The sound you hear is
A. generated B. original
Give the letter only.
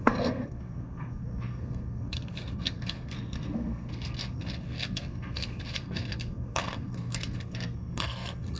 A